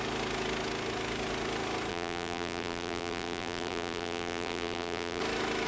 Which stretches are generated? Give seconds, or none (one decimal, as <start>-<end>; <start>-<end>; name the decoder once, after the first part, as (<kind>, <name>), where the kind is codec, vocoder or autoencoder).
1.9-5.2 (vocoder, BigVGAN v2)